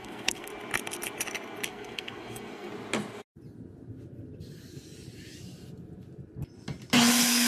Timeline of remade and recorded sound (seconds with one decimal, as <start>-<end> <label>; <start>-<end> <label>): 0.0-0.5 remade; 0.5-1.7 recorded; 1.7-2.7 remade; 2.7-7.1 recorded; 7.1-7.5 remade